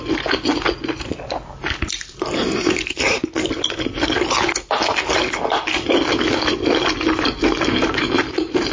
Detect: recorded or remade recorded